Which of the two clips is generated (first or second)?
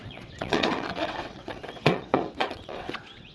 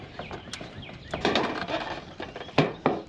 first